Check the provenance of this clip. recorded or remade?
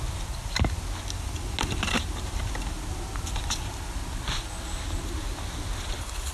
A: recorded